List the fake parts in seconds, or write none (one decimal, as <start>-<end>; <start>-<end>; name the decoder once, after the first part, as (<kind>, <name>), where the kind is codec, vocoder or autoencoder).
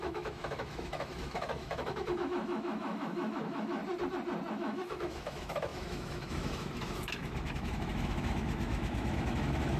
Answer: 0.0-3.8 (autoencoder, DAC-VAE); 4.5-9.8